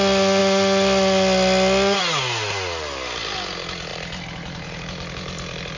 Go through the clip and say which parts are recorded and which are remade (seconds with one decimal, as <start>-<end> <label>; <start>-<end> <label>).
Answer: 0.0-3.9 recorded; 3.9-5.8 remade